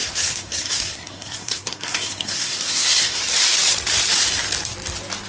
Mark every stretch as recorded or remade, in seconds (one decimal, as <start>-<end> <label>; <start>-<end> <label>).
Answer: 0.0-3.2 remade; 3.2-5.3 recorded